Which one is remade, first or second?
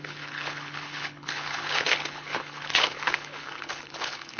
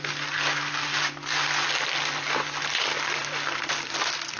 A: first